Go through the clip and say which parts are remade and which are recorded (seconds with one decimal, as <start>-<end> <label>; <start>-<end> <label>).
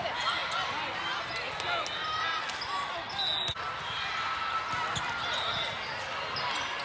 0.0-6.8 recorded